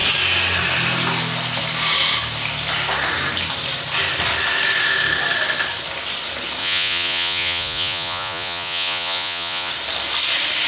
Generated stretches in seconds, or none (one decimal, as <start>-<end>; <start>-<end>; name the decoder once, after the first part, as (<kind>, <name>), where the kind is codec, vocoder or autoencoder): 6.6-9.7 (vocoder, Vocos)